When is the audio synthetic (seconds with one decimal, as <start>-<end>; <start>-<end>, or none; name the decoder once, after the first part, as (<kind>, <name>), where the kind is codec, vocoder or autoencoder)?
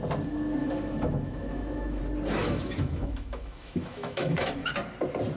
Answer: 0.6-2.0 (autoencoder, DAC-VAE); 2.4-4.7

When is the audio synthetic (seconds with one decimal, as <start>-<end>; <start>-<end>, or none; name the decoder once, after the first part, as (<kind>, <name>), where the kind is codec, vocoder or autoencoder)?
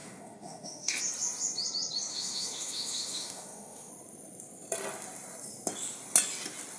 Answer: 0.0-1.0 (autoencoder, DAC-VAE); 2.1-3.9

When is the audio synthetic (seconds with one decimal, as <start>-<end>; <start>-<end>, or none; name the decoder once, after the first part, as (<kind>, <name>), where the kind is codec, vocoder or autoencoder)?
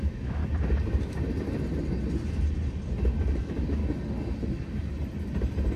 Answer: 0.0-0.4 (autoencoder, DAC-VAE); 3.4-3.8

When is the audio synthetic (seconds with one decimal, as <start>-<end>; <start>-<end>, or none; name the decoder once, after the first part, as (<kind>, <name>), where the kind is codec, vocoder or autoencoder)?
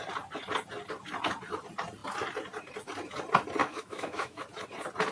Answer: 3.6-4.4 (autoencoder, DAC-VAE)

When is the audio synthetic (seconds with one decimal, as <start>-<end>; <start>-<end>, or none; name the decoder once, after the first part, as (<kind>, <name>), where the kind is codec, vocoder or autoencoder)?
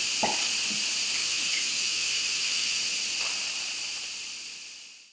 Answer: 1.2-2.8 (autoencoder, DAC-VAE)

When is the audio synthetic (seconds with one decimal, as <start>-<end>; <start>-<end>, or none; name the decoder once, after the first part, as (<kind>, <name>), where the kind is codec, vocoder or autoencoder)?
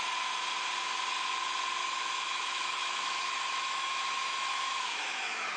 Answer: 1.8-5.6 (autoencoder, DAC-VAE)